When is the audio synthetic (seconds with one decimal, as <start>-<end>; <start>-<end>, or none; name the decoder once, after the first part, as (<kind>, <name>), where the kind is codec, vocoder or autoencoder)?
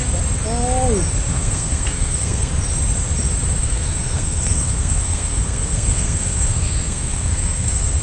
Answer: 1.3-2.5 (codec, SNAC); 3.6-8.0